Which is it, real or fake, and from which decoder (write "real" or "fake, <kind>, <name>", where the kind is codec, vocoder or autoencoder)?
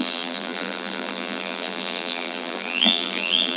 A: fake, vocoder, BigVGAN v2